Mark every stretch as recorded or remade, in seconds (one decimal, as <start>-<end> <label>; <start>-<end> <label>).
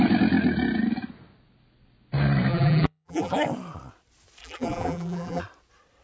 0.0-2.5 recorded; 2.5-3.3 remade; 3.3-4.4 recorded; 4.4-5.4 remade; 5.4-6.0 recorded